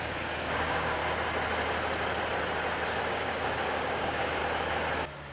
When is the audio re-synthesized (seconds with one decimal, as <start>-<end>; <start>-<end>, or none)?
0.0-1.0; 3.1-4.4